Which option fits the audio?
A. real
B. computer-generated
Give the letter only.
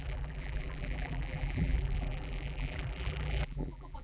B